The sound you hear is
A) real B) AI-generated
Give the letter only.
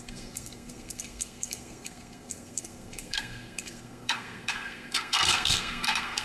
B